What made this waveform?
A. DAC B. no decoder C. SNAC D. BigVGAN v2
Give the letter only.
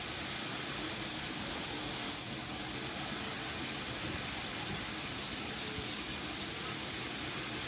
B